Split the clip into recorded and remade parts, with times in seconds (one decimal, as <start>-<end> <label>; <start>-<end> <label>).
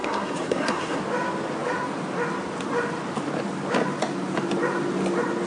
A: 0.0-1.0 remade; 1.0-5.5 recorded